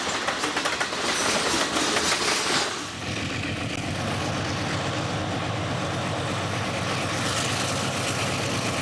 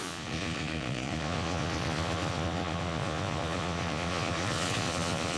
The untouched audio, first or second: first